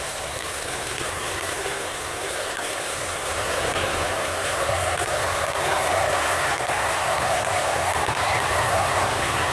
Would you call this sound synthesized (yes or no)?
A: yes